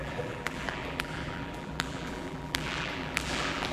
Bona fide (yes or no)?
no